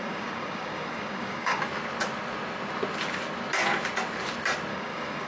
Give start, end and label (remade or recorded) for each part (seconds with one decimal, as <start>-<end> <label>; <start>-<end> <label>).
0.0-1.6 remade; 1.6-4.7 recorded; 4.7-5.3 remade